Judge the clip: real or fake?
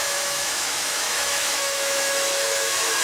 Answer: fake